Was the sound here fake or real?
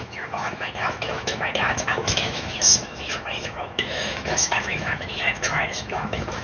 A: fake